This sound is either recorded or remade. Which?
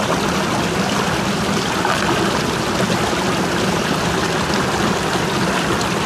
recorded